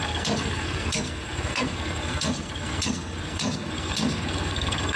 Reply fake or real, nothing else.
fake